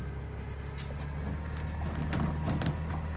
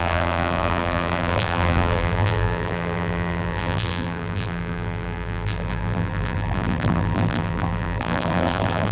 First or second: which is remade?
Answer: second